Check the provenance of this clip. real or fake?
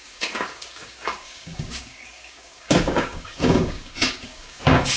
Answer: fake